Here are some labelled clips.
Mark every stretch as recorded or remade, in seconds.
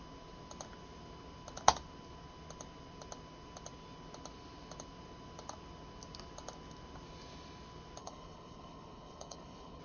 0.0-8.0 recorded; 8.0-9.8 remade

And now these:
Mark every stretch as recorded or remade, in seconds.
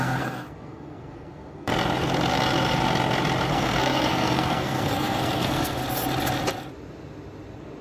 0.0-1.7 remade; 1.7-3.5 recorded; 3.5-5.8 remade; 5.8-7.8 recorded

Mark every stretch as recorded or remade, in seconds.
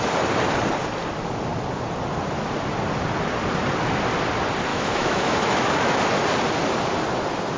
0.0-4.7 recorded; 4.7-5.9 remade; 5.9-7.6 recorded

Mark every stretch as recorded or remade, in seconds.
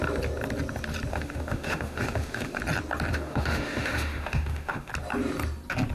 0.0-1.1 recorded; 1.1-2.6 remade; 2.6-3.1 recorded; 3.1-4.9 remade; 4.9-5.9 recorded